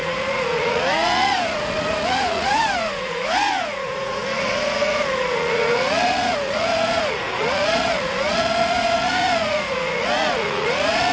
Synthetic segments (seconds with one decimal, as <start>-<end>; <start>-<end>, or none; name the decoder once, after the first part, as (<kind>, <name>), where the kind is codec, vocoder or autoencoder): 0.0-11.1 (vocoder, Vocos)